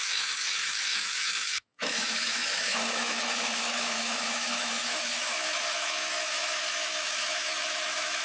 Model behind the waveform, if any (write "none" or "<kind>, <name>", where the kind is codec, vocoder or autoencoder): autoencoder, DAC-VAE